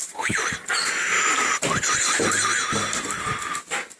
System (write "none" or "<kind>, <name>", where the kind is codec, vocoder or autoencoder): none